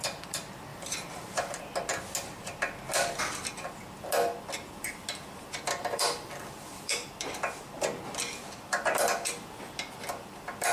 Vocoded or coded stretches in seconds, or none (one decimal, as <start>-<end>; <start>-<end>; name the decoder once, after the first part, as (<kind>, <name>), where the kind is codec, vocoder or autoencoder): 0.7-1.6 (vocoder, BigVGAN v2); 5.8-7.1